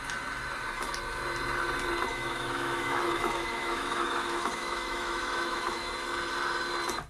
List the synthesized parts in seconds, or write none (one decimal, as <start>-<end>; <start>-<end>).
2.1-5.9